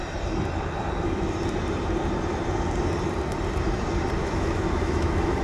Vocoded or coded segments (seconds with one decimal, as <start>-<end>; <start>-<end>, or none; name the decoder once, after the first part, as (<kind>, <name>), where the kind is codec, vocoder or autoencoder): 4.2-5.4 (autoencoder, DAC-VAE)

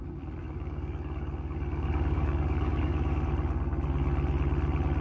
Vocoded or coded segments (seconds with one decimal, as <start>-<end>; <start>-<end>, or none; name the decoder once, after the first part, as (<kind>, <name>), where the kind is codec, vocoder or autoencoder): 0.4-3.3 (codec, DAC)